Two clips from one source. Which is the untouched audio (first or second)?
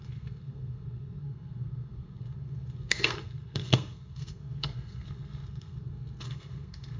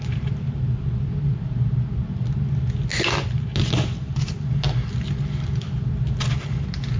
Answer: second